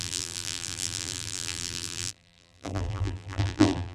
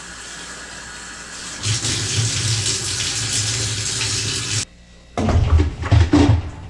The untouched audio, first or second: second